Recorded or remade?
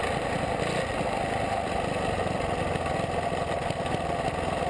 recorded